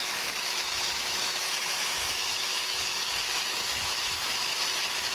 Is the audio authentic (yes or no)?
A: no